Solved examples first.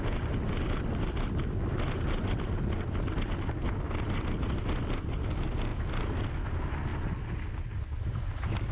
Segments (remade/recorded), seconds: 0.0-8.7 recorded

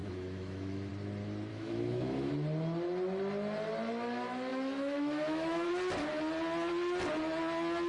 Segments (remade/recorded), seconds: 0.0-0.9 remade; 0.9-1.5 recorded; 1.5-2.3 remade; 2.3-4.5 recorded; 4.5-5.7 remade; 5.7-7.9 recorded

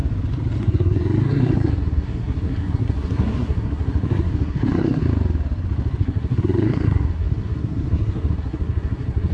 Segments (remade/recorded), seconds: 0.0-0.6 recorded; 0.6-5.0 remade; 5.0-6.0 recorded; 6.0-9.3 remade

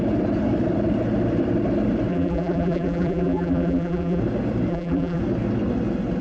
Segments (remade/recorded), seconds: 0.0-2.1 recorded; 2.1-4.2 remade; 4.2-4.7 recorded; 4.7-5.2 remade; 5.2-6.2 recorded

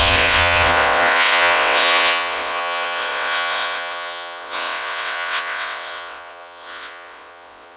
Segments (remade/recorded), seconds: 0.0-7.8 remade